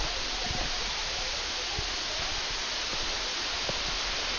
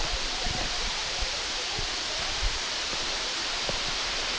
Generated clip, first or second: second